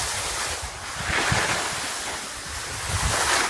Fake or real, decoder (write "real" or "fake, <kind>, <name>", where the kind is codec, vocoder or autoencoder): real